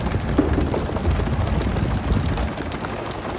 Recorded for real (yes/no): yes